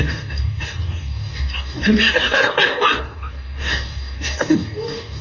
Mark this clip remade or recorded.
remade